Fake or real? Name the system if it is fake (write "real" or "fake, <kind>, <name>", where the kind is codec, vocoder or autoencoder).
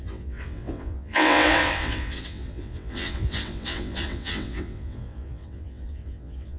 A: fake, vocoder, WaveNeXt